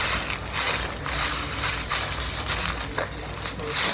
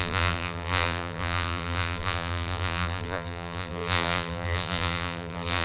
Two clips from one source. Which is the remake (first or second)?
second